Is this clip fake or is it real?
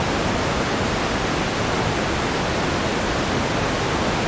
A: real